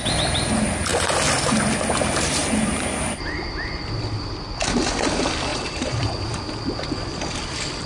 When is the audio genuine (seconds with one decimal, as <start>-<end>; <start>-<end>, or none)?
0.0-2.4; 3.1-5.5; 6.5-7.9